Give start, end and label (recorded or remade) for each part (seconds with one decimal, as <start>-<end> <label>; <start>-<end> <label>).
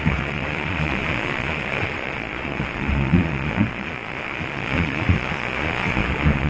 0.0-6.5 remade